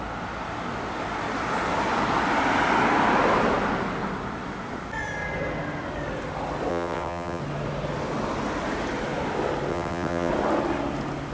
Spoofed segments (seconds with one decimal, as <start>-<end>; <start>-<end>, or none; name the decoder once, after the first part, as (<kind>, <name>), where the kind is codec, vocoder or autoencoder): 6.7-7.4 (vocoder, WaveNeXt); 9.7-10.3